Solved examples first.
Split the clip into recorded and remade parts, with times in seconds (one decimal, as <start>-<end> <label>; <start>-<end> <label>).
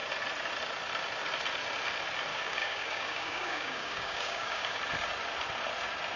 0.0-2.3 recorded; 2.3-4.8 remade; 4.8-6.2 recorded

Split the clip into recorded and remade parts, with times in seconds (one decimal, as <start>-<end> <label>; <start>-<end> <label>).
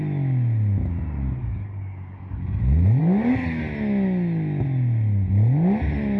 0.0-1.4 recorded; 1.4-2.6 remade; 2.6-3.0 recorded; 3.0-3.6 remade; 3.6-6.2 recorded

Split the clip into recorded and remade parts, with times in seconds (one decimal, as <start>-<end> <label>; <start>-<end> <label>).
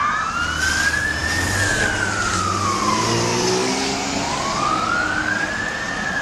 0.0-3.3 recorded; 3.3-5.5 remade; 5.5-6.2 recorded